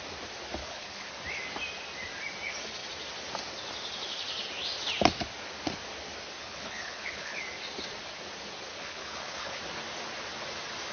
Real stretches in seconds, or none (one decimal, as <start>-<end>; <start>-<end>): 0.0-0.6; 1.2-6.4; 7.4-8.7; 9.6-10.9